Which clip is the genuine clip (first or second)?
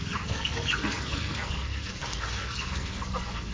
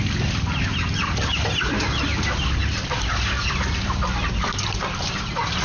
second